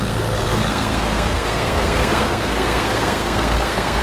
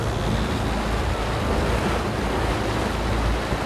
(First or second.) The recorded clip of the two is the second